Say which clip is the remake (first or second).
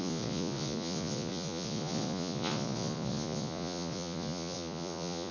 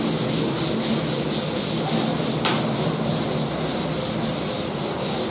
first